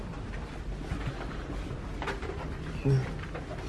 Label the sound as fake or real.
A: real